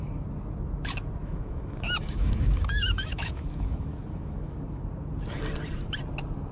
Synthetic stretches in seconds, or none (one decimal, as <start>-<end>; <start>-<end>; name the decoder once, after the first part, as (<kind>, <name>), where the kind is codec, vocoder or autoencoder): 1.2-4.8 (autoencoder, DAC-VAE)